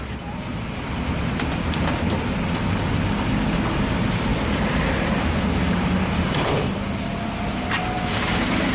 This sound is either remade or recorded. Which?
recorded